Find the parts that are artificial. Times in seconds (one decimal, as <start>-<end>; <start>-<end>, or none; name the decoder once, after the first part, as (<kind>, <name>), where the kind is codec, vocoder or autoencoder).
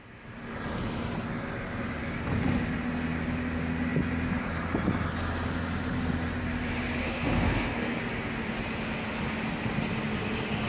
7.0-8.0 (codec, SNAC)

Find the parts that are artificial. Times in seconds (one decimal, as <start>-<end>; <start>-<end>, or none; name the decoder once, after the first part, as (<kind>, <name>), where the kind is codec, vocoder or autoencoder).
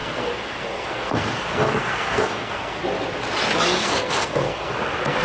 0.0-2.8 (codec, SNAC); 3.8-5.2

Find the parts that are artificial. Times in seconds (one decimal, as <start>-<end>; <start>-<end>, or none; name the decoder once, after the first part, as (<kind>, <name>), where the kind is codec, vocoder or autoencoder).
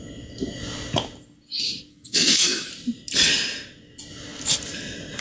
1.9-2.7 (codec, SNAC)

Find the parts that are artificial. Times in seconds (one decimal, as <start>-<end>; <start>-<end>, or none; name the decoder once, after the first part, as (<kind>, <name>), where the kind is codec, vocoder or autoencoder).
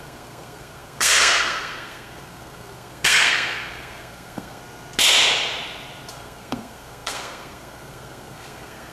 0.0-4.6 (codec, SNAC); 6.1-8.9